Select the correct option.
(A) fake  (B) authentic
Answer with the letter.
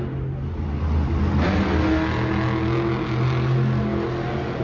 B